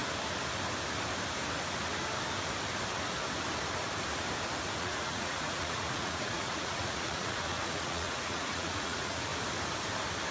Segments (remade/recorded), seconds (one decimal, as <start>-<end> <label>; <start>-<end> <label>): 0.0-4.8 recorded; 4.8-9.3 remade; 9.3-10.3 recorded